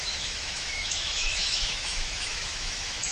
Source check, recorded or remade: remade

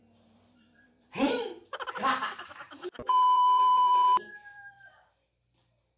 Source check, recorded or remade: remade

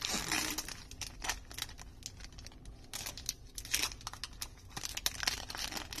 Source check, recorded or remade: recorded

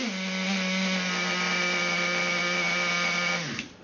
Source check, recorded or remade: recorded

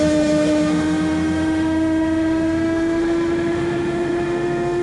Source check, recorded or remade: remade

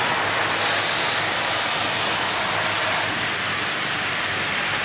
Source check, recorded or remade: remade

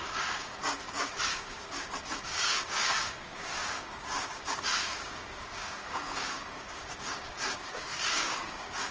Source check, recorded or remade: remade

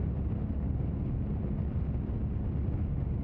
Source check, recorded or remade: recorded